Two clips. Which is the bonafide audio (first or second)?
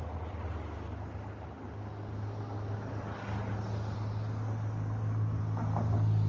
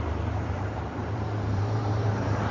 first